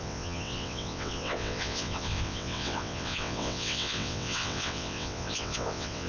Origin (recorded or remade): remade